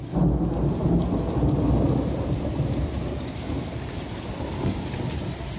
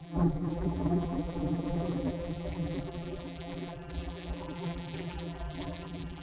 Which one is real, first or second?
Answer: first